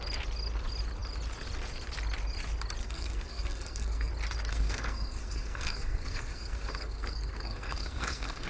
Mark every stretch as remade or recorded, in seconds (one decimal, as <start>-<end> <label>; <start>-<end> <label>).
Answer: 0.0-2.8 recorded; 2.8-4.1 remade; 4.1-4.5 recorded; 4.5-8.5 remade